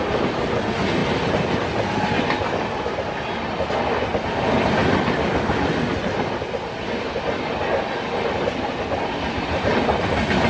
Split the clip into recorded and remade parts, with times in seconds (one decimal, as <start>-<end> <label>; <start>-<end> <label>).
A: 0.0-10.5 recorded